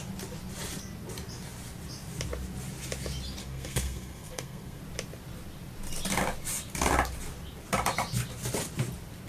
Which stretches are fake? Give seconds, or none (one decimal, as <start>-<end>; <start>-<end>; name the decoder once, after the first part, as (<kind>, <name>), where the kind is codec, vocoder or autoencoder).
3.4-4.8 (codec, SNAC)